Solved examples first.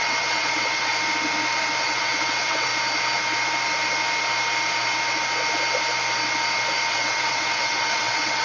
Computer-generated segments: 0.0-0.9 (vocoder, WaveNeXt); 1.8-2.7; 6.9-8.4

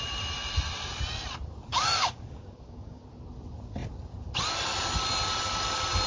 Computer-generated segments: 1.7-3.0 (codec, DAC)

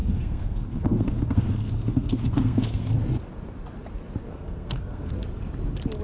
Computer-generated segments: 0.0-2.9 (codec, SNAC); 4.3-5.1

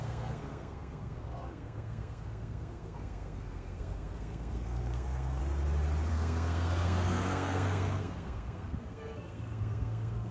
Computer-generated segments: 0.0-5.4 (codec, SNAC); 6.1-10.3

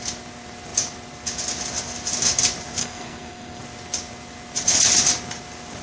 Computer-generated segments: 2.8-3.6 (codec, SNAC)